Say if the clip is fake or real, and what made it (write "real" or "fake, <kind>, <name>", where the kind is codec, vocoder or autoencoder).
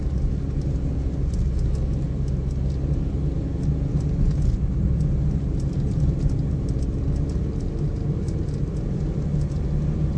real